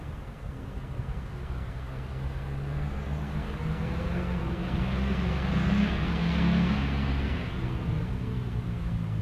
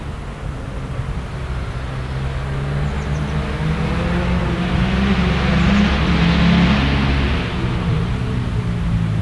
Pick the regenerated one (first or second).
first